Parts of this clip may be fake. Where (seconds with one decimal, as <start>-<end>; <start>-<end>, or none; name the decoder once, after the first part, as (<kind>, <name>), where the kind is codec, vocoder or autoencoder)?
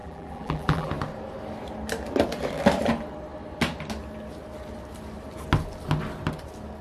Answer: 0.0-0.9 (vocoder, BigVGAN v2)